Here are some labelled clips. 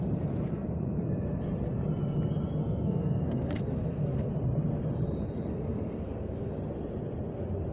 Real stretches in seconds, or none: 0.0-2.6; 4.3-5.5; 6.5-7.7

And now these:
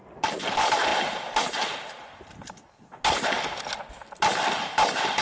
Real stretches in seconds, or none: 0.0-5.2

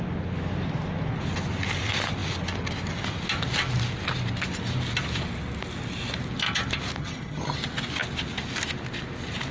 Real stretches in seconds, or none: 0.0-7.0; 7.6-9.5

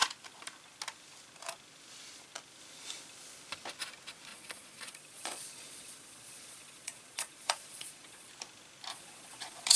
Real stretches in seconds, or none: 0.0-4.3; 8.3-8.9

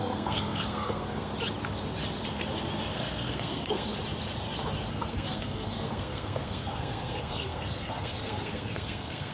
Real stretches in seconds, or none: 1.3-2.9; 3.9-4.9

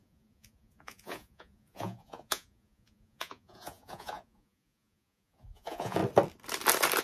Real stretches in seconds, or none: 6.0-7.0

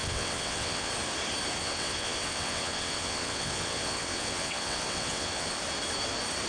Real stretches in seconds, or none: 0.9-1.6; 5.5-6.5